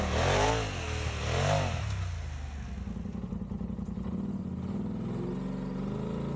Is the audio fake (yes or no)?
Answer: no